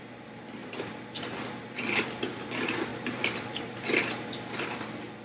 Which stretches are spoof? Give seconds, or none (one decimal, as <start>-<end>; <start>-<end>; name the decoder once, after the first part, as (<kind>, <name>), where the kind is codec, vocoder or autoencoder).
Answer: 0.6-2.2 (vocoder, BigVGAN v2); 2.9-4.0